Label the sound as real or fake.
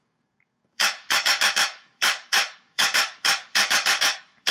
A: fake